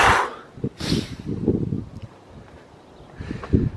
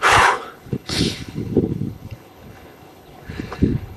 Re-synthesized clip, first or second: second